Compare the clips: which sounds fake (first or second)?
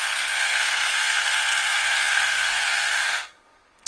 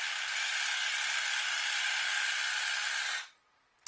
first